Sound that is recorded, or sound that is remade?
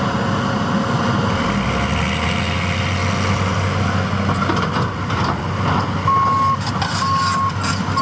recorded